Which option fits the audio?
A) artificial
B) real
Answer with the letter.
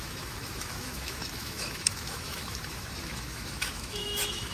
A